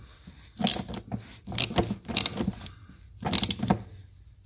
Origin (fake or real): real